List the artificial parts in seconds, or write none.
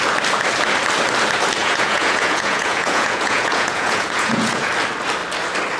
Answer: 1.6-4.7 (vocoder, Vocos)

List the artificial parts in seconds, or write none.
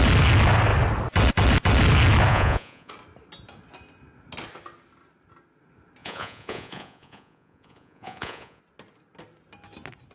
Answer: 2.3-2.9 (vocoder, Vocos); 6.0-8.6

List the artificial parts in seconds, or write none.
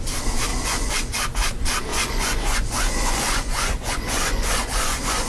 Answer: 0.5-1.1 (vocoder, Vocos); 1.9-5.3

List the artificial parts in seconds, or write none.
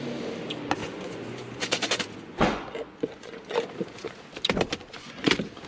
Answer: 0.8-4.2 (vocoder, Vocos); 4.8-5.3